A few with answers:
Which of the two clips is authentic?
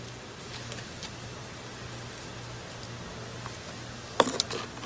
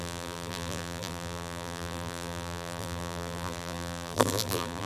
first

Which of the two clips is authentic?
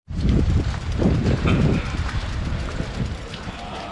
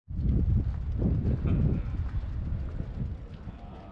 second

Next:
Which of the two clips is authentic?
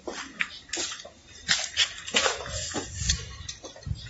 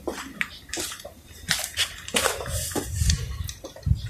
first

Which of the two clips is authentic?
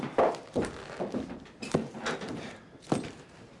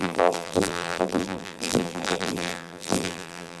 first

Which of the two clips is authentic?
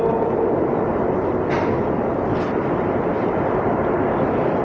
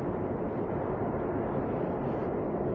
second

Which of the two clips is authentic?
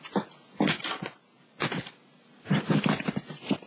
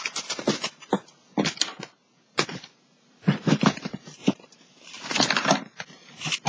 first